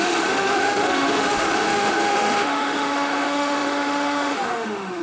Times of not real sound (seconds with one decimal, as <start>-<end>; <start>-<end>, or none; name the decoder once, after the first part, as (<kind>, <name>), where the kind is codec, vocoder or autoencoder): 0.0-5.0 (autoencoder, DAC-VAE)

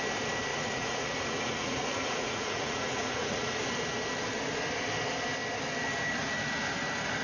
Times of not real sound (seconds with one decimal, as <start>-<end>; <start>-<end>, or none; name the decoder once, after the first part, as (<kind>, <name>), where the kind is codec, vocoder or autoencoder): 0.5-3.6 (vocoder, Vocos)